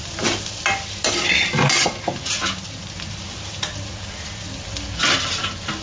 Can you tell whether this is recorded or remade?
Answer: recorded